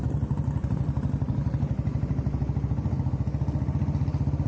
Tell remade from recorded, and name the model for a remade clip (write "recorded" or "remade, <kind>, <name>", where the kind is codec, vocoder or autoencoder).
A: recorded